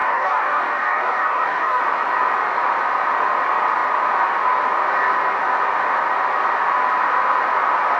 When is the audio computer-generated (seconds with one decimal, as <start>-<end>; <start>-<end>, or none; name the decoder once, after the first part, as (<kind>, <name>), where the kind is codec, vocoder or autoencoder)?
0.0-1.8 (codec, DAC)